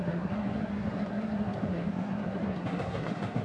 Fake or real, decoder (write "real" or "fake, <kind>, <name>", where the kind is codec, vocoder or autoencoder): fake, codec, SNAC